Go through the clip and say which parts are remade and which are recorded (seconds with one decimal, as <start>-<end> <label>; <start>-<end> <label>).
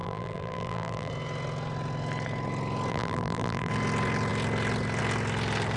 0.0-1.1 remade; 1.1-2.9 recorded; 2.9-3.7 remade; 3.7-5.8 recorded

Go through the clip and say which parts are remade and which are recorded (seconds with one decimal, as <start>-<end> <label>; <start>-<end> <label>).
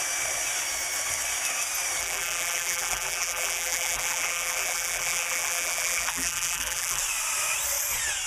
0.0-2.0 recorded; 2.0-7.0 remade; 7.0-8.3 recorded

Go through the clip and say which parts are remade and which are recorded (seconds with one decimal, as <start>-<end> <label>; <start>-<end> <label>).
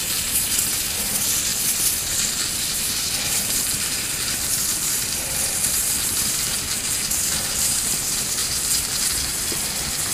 0.0-1.5 recorded; 1.5-6.7 remade; 6.7-8.4 recorded; 8.4-9.5 remade; 9.5-10.1 recorded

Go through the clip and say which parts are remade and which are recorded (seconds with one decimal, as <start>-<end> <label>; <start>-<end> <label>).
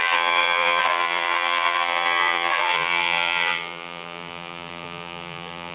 0.0-5.7 remade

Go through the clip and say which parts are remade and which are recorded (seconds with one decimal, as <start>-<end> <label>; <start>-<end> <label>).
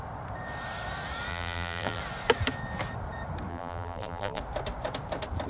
0.0-1.3 recorded; 1.3-2.0 remade; 2.0-3.5 recorded; 3.5-4.4 remade; 4.4-5.5 recorded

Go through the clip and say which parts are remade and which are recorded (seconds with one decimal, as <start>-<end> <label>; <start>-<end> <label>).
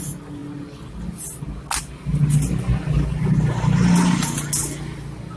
0.0-5.4 recorded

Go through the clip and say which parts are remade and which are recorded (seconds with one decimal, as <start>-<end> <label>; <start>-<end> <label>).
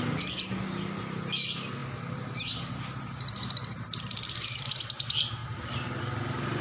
0.0-6.6 recorded